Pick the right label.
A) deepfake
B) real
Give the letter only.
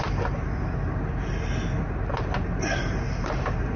B